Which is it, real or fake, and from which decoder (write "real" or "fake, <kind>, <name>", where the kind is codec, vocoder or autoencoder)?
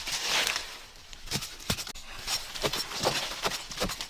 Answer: real